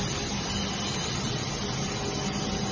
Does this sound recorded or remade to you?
recorded